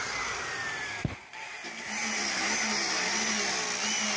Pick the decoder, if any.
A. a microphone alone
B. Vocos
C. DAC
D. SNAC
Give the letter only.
A